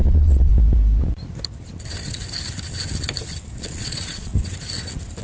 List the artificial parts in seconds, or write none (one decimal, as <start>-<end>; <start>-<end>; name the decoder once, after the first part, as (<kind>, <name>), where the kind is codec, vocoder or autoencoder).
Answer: 0.0-0.5 (vocoder, Vocos); 3.6-4.3